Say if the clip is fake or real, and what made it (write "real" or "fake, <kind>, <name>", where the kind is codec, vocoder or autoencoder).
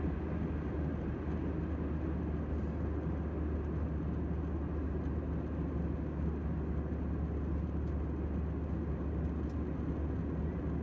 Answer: real